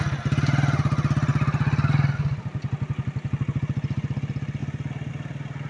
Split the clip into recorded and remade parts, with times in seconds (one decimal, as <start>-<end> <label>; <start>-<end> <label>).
0.0-5.7 recorded